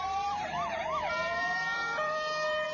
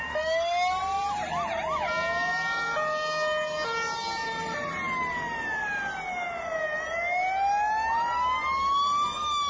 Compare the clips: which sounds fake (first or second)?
first